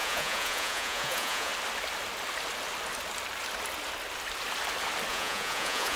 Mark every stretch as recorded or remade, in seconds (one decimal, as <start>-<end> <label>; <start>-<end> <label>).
0.0-1.5 remade; 1.5-5.1 recorded; 5.1-6.0 remade